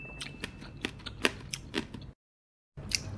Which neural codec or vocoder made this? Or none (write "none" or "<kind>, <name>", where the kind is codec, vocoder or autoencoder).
none